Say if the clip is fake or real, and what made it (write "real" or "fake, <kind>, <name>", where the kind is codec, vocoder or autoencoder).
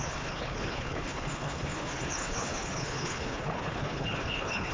fake, codec, HILCodec